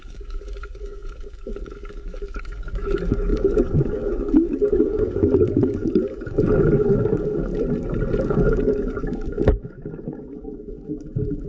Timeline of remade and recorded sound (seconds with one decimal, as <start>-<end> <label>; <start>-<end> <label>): 0.0-7.5 remade; 7.5-8.2 recorded; 8.2-11.5 remade